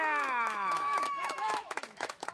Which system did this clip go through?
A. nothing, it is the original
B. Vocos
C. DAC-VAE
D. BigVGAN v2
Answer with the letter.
C